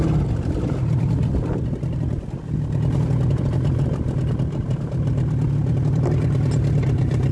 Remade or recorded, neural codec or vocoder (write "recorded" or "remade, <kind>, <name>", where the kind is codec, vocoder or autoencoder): recorded